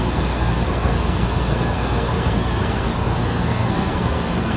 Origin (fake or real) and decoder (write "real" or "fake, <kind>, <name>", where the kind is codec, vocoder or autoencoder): fake, codec, SNAC